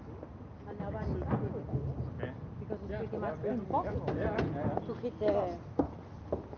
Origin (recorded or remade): recorded